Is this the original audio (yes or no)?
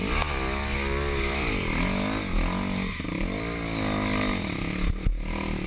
yes